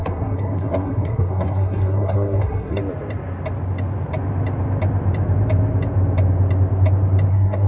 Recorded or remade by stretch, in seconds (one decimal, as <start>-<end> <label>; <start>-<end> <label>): 0.0-2.8 remade; 2.8-7.3 recorded; 7.3-7.7 remade